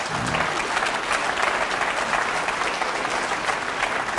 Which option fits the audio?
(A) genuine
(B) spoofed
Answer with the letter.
A